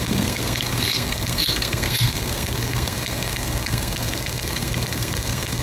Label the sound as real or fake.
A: fake